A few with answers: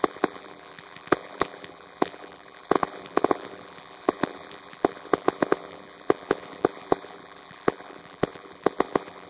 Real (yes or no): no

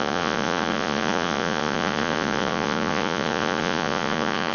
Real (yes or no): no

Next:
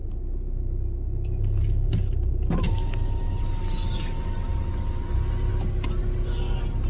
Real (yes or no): yes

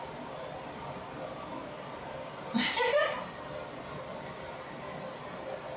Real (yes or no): yes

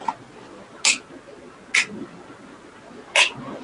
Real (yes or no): yes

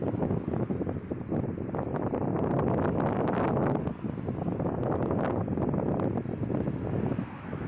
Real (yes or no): yes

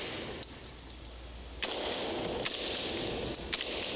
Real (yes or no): yes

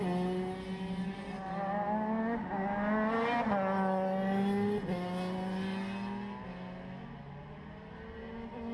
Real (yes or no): yes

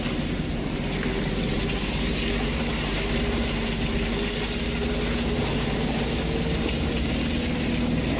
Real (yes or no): yes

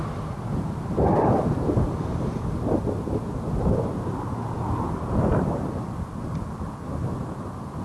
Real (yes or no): yes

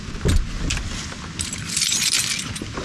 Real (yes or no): yes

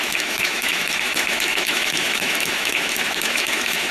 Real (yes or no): no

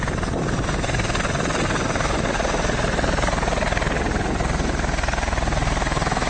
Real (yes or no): yes